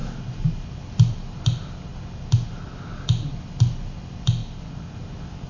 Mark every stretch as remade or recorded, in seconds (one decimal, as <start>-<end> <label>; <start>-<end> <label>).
0.0-5.5 recorded